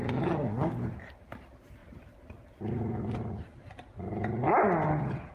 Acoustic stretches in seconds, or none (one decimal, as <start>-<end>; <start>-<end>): 0.0-1.8; 3.3-5.3